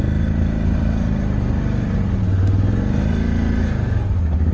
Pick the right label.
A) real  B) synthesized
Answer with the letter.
A